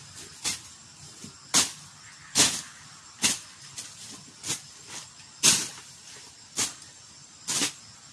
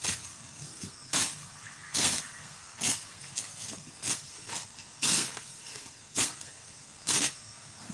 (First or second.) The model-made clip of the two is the second